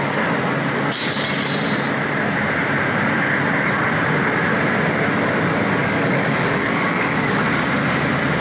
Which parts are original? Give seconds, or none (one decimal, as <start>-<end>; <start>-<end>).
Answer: 0.0-5.8; 7.4-8.4